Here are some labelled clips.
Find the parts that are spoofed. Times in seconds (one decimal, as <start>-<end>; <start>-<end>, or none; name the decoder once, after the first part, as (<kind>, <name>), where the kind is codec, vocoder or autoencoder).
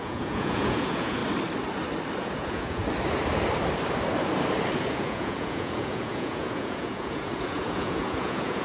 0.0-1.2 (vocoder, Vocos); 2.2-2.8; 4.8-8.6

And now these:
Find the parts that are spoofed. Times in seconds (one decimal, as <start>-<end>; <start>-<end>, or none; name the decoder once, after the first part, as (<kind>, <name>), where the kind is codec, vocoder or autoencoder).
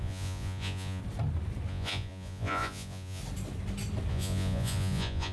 0.0-1.0 (vocoder, Vocos); 1.7-3.2; 4.1-5.3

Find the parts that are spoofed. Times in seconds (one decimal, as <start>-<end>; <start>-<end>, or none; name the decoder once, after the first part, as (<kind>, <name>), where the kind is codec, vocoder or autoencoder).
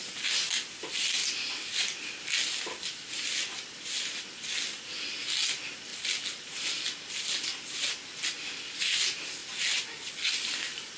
none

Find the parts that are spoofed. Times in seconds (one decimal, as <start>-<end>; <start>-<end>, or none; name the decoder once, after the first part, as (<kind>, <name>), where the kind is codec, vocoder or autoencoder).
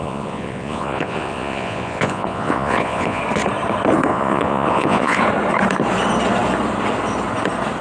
0.0-3.2 (vocoder, Vocos); 4.1-5.2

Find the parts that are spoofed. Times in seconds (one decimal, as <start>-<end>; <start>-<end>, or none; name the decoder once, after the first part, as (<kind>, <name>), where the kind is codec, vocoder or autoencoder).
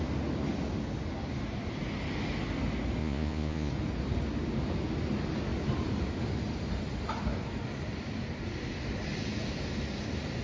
3.0-3.7 (vocoder, Vocos)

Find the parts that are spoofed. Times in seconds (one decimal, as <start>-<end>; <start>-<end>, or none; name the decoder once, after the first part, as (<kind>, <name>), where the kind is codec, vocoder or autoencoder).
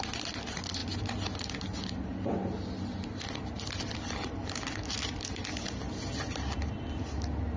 none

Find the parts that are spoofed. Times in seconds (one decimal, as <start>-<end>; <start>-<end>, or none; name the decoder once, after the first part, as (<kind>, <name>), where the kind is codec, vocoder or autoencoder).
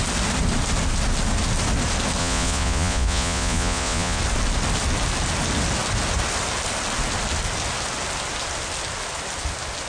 2.2-4.2 (vocoder, Vocos)